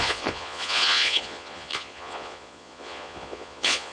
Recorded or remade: remade